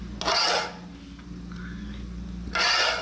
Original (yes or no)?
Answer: yes